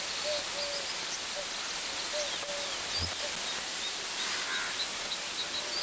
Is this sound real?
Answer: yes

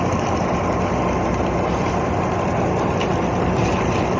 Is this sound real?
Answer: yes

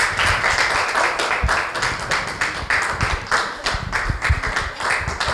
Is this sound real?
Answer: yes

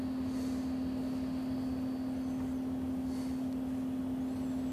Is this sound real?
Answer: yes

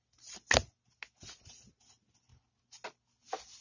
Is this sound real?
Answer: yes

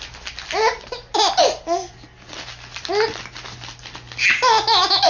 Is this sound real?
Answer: yes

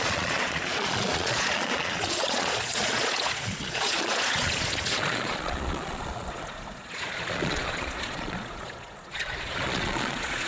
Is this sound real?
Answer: no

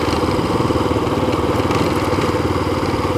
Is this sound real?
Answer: yes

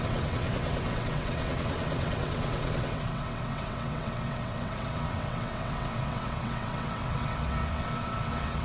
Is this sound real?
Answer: no